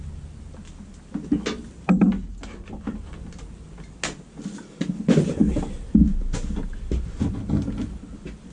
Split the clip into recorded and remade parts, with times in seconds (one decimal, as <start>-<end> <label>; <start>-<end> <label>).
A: 0.0-8.5 recorded